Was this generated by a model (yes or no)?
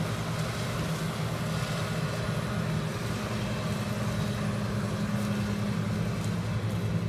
no